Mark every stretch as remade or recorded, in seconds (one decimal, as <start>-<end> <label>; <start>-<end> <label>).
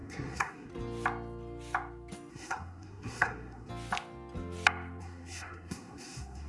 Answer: 0.0-0.7 remade; 0.7-2.3 recorded; 2.3-3.7 remade; 3.7-5.0 recorded; 5.0-6.5 remade